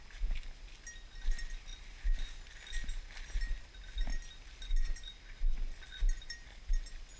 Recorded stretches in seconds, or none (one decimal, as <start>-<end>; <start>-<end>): 0.0-7.2